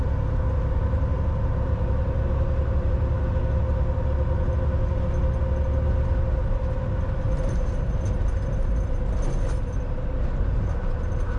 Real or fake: real